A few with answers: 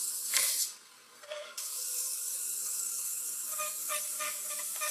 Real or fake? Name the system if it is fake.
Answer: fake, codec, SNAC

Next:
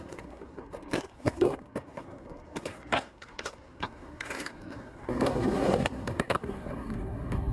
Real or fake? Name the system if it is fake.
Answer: fake, codec, SNAC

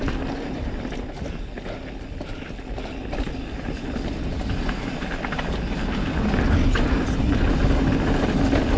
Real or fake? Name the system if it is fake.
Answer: real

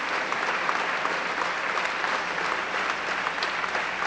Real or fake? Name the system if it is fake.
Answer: fake, vocoder, BigVGAN v2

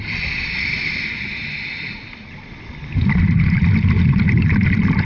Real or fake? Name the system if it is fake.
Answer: real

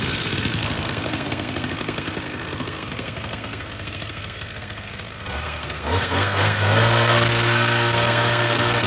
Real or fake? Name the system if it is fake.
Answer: fake, codec, SNAC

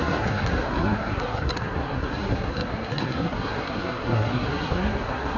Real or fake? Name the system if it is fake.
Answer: fake, codec, SNAC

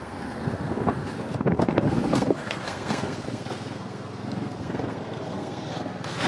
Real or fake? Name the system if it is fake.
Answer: fake, codec, SNAC